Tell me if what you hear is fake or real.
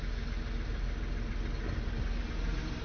real